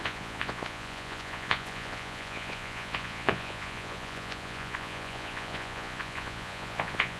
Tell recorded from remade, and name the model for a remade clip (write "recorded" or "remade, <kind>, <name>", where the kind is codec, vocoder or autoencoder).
remade, vocoder, Vocos